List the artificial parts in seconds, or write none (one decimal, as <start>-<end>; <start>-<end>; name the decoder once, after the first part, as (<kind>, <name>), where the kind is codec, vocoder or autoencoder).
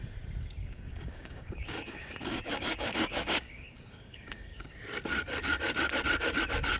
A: 0.6-4.7 (codec, DAC)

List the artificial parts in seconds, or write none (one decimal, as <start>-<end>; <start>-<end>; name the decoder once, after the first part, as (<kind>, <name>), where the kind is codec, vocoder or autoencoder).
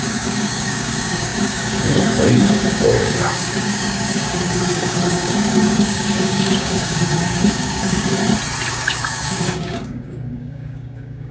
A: 0.0-8.2 (codec, DAC); 8.7-11.3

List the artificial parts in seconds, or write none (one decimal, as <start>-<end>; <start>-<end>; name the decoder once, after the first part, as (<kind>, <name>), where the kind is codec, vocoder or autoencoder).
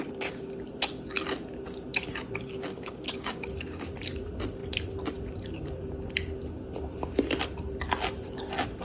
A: 2.7-3.9 (codec, DAC)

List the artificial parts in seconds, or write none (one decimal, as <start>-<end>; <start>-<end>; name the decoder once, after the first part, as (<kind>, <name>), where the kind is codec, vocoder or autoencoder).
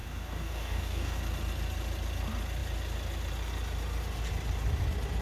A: 0.0-1.2 (codec, DAC)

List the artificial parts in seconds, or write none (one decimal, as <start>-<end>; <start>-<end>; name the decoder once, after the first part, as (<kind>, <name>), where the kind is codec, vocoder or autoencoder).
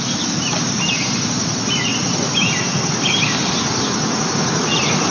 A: none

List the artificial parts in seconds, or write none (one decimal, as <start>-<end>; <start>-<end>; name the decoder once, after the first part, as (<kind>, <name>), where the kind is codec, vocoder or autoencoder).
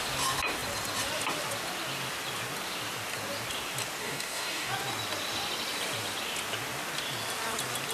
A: 4.0-4.7 (codec, DAC)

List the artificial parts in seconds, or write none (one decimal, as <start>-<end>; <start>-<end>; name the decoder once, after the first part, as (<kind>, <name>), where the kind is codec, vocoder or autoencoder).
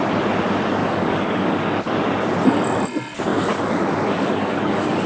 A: 0.8-1.6 (codec, DAC); 3.3-5.1